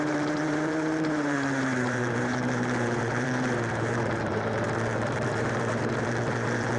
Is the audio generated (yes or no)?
yes